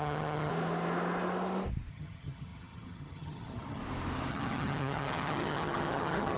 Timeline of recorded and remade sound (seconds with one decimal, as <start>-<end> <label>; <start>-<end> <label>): 0.0-0.5 remade; 0.5-1.9 recorded; 1.9-3.8 remade; 3.8-4.3 recorded; 4.3-6.4 remade